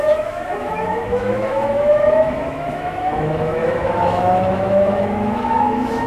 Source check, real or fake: fake